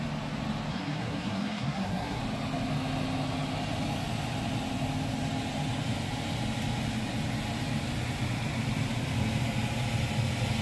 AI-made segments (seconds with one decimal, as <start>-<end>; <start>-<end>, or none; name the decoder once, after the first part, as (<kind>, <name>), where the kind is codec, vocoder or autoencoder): 0.7-2.2 (codec, SNAC)